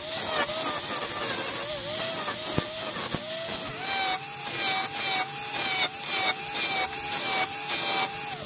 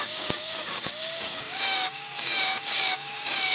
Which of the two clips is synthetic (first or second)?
second